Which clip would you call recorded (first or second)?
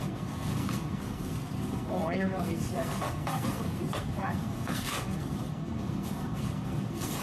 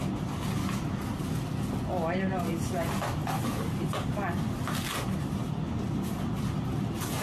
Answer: second